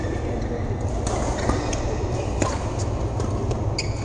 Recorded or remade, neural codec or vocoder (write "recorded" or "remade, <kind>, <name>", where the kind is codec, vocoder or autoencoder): recorded